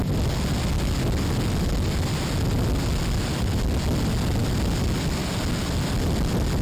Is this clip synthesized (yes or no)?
no